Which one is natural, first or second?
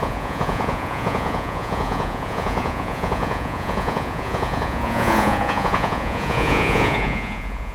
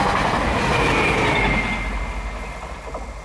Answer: second